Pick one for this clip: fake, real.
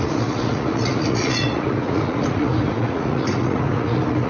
fake